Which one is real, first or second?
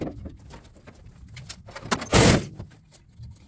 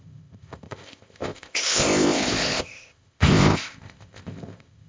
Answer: first